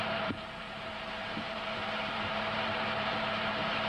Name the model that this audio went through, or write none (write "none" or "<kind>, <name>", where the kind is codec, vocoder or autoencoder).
vocoder, BigVGAN v2